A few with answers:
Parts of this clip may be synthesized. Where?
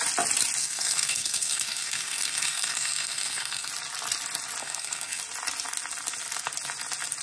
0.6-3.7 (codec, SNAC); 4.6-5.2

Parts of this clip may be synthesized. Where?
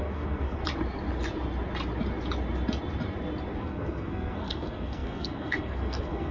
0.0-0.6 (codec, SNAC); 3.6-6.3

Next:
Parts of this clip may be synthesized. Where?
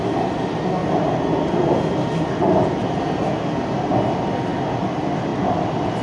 none